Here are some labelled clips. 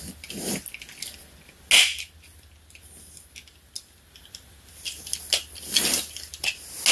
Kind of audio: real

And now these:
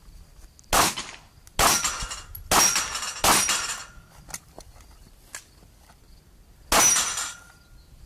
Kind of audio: real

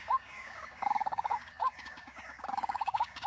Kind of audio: fake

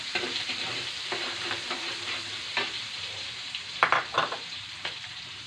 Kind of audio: fake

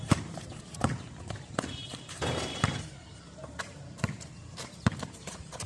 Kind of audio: fake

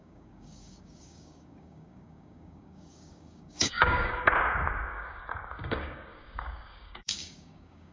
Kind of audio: fake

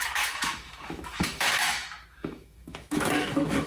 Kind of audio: fake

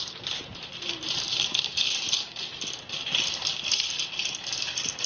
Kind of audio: real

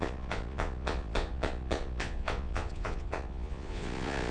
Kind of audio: fake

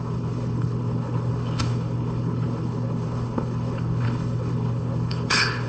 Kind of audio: fake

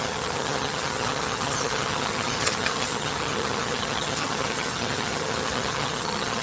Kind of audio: fake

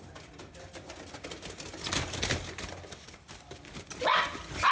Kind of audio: real